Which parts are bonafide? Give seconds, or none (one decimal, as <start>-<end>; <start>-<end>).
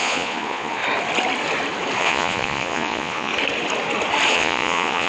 0.8-2.0; 3.3-4.3